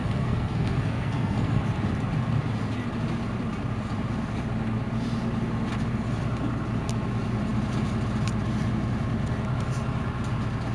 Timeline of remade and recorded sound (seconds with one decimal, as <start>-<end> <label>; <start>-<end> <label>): 0.0-1.6 remade; 1.6-10.7 recorded